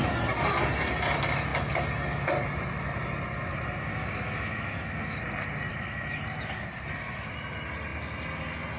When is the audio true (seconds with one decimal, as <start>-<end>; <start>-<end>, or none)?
0.0-3.9; 5.2-5.7; 6.2-8.8